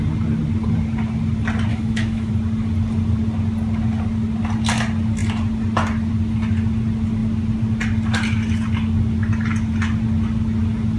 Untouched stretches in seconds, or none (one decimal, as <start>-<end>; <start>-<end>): 0.0-1.7; 2.3-11.0